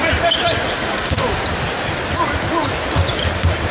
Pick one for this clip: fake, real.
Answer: real